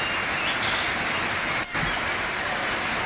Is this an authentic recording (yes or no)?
yes